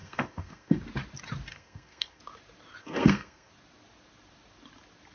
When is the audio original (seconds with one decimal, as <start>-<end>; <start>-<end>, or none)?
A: 0.8-1.5; 2.2-2.8; 3.5-5.1